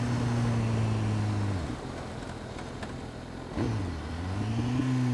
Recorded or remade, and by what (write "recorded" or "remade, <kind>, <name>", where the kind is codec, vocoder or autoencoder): recorded